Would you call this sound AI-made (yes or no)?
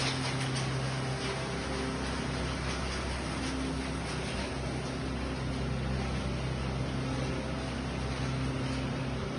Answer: no